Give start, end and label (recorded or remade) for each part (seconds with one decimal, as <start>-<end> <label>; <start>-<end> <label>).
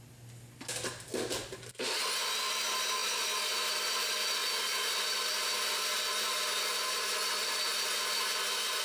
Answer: 0.0-8.8 recorded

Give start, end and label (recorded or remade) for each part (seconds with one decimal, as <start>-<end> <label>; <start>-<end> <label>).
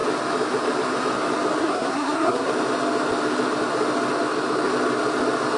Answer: 0.0-1.6 recorded; 1.6-2.5 remade; 2.5-5.6 recorded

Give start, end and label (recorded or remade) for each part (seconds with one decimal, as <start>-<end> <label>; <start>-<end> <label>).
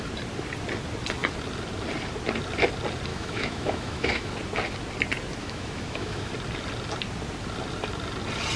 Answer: 0.0-3.1 recorded; 3.1-4.3 remade; 4.3-5.4 recorded; 5.4-6.3 remade; 6.3-8.6 recorded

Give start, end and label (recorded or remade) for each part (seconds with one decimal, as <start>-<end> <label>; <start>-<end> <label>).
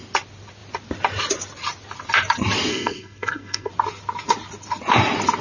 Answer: 0.0-2.7 recorded; 2.7-3.7 remade; 3.7-5.4 recorded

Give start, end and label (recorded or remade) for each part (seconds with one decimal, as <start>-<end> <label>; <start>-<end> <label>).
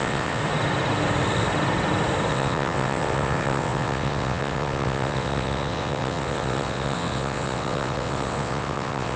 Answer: 0.0-0.4 remade; 0.4-2.3 recorded; 2.3-9.2 remade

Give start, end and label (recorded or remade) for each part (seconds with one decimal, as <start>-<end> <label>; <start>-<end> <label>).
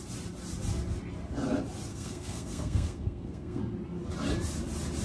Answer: 0.0-1.9 recorded; 1.9-3.6 remade; 3.6-5.0 recorded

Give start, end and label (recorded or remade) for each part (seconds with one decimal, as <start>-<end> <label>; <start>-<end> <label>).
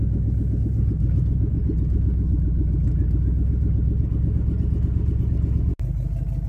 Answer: 0.0-6.5 recorded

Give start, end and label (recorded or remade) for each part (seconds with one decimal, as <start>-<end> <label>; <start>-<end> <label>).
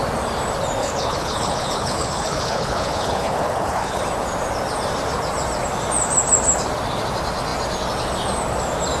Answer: 0.0-0.8 recorded; 0.8-4.0 remade; 4.0-9.0 recorded